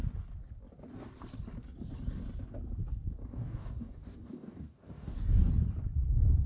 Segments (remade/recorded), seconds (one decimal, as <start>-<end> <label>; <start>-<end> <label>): 0.0-3.3 recorded; 3.3-5.5 remade; 5.5-6.5 recorded